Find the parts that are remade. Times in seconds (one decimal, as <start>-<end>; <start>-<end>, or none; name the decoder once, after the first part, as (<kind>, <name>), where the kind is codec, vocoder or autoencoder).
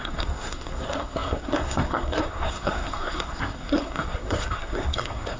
0.0-5.4 (codec, SNAC)